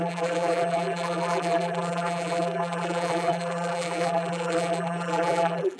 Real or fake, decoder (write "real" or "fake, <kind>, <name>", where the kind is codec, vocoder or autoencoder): fake, vocoder, BigVGAN v2